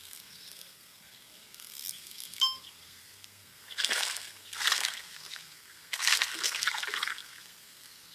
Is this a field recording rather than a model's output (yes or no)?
no